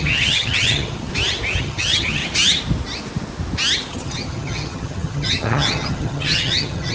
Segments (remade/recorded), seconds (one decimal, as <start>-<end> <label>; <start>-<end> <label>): 0.0-1.1 remade; 1.1-1.6 recorded; 1.6-2.2 remade; 2.2-3.9 recorded; 3.9-6.9 remade